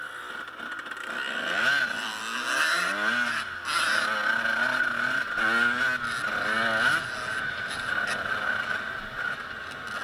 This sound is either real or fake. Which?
real